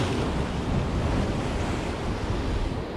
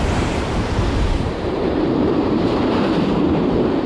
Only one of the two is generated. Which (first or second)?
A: second